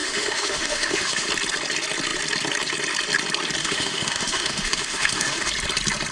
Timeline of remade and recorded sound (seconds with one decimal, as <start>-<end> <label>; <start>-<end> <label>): 0.0-1.3 remade; 1.3-3.6 recorded; 3.6-5.5 remade; 5.5-6.1 recorded